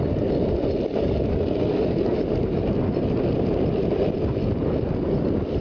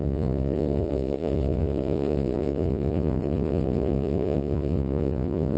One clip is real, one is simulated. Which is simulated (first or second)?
second